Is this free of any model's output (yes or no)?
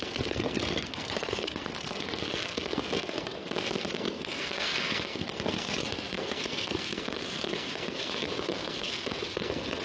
no